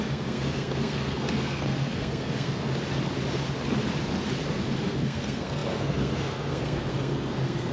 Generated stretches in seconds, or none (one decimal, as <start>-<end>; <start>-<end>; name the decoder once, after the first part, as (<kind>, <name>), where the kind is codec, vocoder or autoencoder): 0.0-2.7 (codec, SNAC); 4.5-7.7